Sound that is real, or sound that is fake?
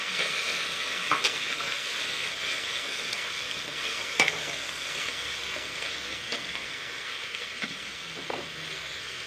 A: fake